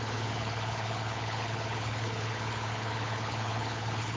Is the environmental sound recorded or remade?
remade